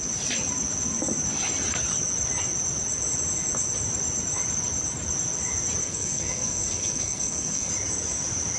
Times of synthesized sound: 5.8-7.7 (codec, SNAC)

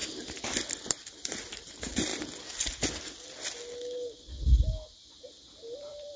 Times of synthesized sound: 0.9-2.1 (vocoder, BigVGAN v2); 5.8-6.2

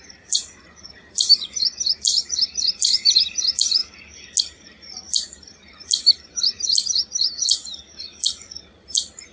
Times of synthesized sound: 0.0-3.8 (vocoder, BigVGAN v2); 4.4-9.3

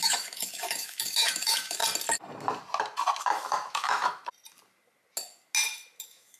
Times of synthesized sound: 0.0-1.8 (autoencoder, DAC-VAE); 3.2-4.2; 6.0-6.4

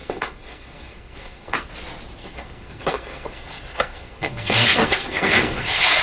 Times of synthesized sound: 0.0-1.7 (codec, SNAC); 2.2-6.0

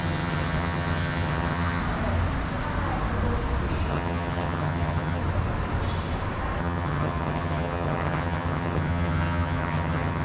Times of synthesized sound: 0.0-1.8 (vocoder, HiFi-GAN); 3.9-5.2; 6.6-10.2

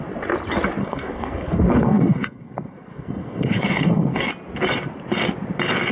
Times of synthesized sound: 0.8-4.3 (codec, SNAC)